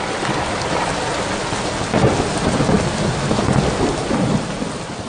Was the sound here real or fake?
real